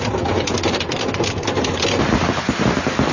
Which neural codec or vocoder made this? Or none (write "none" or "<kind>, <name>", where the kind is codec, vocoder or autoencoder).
none